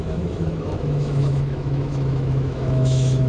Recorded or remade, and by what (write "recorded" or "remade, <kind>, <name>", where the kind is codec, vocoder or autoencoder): remade, autoencoder, DAC-VAE